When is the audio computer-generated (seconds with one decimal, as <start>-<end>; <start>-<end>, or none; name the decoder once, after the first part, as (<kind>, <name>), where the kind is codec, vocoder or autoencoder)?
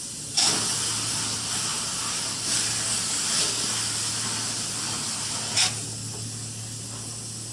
none